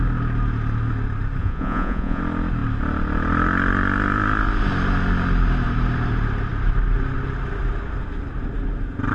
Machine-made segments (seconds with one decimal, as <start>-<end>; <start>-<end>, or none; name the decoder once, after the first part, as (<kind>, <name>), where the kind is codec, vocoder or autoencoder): 1.4-2.2 (vocoder, Vocos)